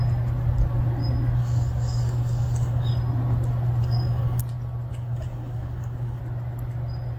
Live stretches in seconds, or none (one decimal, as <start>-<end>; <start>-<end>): 0.0-1.4; 2.9-3.8; 4.4-4.9; 6.2-7.2